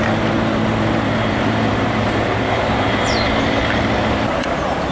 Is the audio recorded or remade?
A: remade